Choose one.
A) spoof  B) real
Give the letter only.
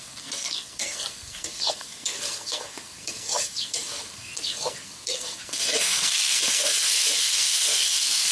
A